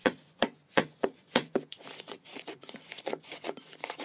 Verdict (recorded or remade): remade